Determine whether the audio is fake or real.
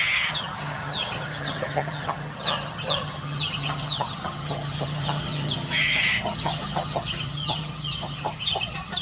fake